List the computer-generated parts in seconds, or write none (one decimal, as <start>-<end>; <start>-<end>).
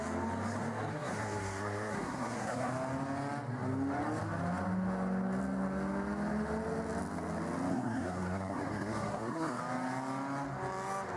0.9-2.7; 7.7-9.6